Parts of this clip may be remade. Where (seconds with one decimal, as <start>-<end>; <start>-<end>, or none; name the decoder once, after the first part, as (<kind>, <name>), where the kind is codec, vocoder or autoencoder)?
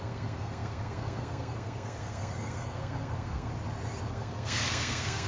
0.0-3.5 (codec, SNAC); 4.1-5.3